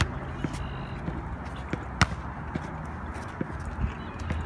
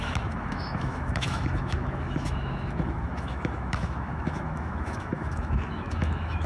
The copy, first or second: second